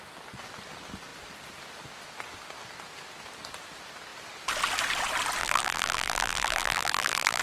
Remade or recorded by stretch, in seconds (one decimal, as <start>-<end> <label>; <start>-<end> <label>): 0.0-5.4 recorded; 5.4-7.4 remade